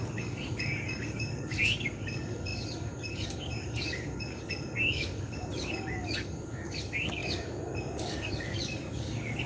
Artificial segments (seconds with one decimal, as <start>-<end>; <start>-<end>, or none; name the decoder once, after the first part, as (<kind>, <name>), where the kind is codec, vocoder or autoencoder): 0.0-9.5 (codec, DAC)